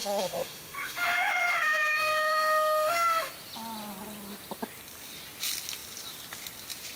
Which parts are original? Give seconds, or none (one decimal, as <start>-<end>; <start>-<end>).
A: 3.3-7.0